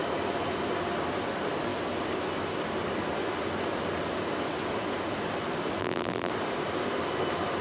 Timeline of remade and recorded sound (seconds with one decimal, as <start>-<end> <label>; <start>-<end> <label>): 0.0-5.8 recorded; 5.8-6.3 remade; 6.3-7.6 recorded